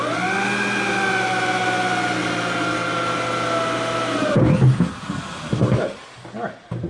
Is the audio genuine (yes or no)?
yes